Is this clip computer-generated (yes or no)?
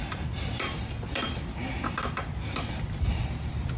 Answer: yes